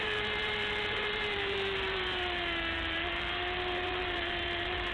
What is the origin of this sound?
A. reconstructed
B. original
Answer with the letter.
A